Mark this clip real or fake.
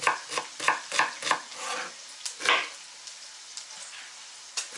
real